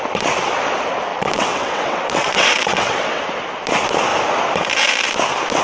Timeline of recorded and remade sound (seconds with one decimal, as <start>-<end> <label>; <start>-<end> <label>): 0.0-1.1 recorded; 1.1-3.2 remade; 3.2-5.6 recorded